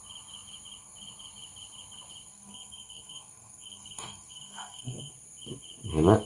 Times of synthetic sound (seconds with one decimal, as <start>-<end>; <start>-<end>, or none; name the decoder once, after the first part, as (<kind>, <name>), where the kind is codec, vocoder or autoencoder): 2.3-5.1 (codec, SNAC)